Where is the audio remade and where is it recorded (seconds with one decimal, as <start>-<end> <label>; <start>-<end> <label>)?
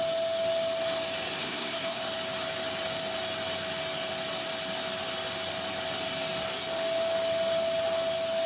0.0-1.4 recorded; 1.4-2.0 remade; 2.0-8.5 recorded